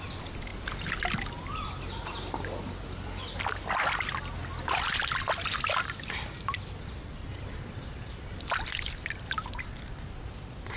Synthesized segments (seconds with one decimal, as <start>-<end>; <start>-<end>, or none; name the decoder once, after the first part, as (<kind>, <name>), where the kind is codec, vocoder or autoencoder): none